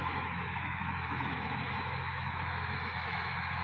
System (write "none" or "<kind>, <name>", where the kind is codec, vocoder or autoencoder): autoencoder, DAC-VAE